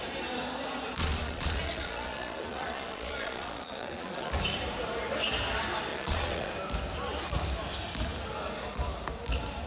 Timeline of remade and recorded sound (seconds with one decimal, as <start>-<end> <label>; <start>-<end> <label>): 0.0-1.0 recorded; 1.0-4.3 remade; 4.3-5.9 recorded; 5.9-6.5 remade; 6.5-9.7 recorded